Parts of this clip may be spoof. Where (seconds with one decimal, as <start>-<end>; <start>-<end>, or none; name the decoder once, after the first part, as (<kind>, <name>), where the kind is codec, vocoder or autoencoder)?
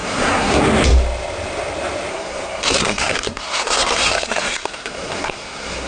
0.0-0.6 (codec, SNAC); 2.1-5.9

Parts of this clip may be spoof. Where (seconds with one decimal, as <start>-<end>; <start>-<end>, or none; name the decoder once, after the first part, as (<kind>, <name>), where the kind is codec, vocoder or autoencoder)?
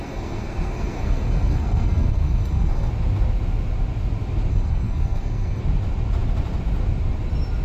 0.0-2.9 (codec, SNAC); 4.5-5.6